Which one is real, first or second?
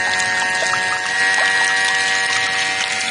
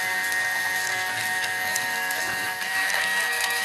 first